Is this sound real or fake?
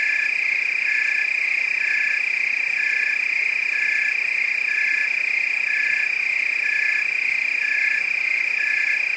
real